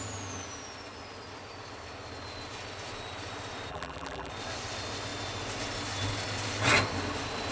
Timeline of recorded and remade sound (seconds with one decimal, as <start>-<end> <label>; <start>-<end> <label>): 0.0-3.7 recorded; 3.7-4.3 remade; 4.3-7.5 recorded